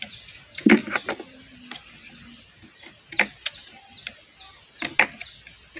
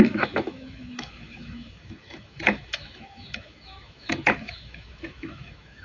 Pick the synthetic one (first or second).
second